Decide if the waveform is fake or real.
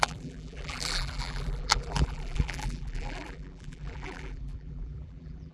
fake